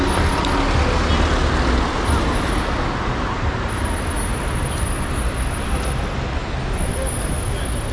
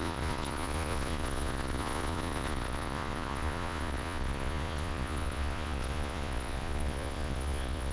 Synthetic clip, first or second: second